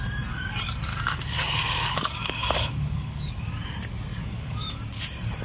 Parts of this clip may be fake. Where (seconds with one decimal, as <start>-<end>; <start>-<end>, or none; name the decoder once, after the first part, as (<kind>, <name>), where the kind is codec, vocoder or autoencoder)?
0.9-3.3 (codec, DAC); 4.1-4.8